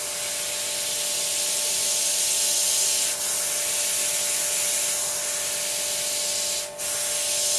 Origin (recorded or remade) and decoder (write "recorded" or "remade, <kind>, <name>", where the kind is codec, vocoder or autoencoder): recorded